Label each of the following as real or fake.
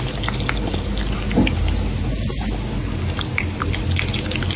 real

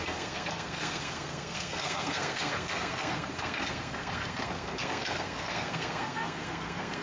fake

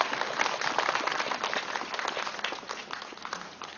real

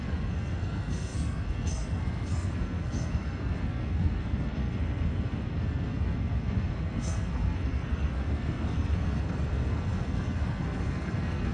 fake